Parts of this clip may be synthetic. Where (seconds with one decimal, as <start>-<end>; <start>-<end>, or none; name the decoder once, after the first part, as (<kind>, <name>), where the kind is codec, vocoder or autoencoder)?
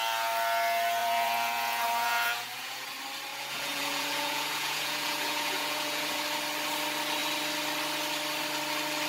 1.0-2.9 (vocoder, Vocos); 3.3-6.2